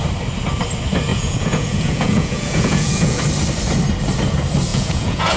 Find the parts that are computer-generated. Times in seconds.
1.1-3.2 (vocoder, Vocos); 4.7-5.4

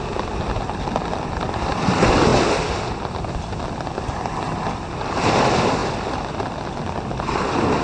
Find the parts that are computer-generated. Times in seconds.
none

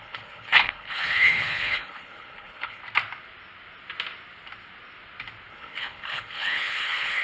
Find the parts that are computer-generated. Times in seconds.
0.0-2.8 (codec, HILCodec); 5.5-7.2